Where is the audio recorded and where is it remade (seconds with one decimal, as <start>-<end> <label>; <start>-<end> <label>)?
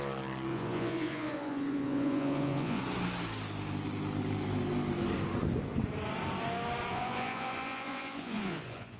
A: 0.0-0.5 recorded; 0.5-2.8 remade; 2.8-6.9 recorded; 6.9-9.0 remade